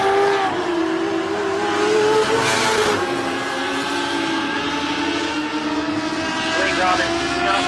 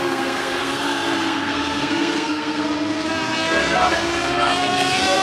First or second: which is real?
first